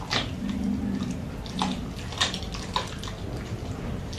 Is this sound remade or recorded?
recorded